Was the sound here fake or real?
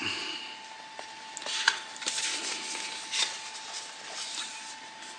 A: real